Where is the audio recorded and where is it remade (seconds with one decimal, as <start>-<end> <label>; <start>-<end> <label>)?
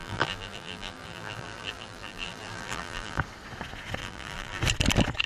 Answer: 0.0-3.2 remade; 3.2-4.0 recorded; 4.0-4.6 remade; 4.6-5.3 recorded